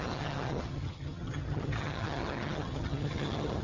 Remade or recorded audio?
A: remade